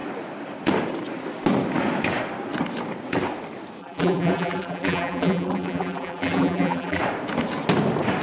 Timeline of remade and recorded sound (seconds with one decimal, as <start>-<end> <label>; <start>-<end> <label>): 0.0-3.8 recorded; 3.8-7.0 remade; 7.0-8.2 recorded